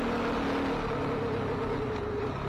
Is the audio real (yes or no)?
yes